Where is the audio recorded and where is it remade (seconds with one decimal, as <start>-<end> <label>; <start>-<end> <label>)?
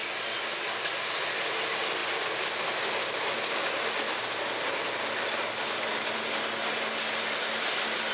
0.0-8.1 recorded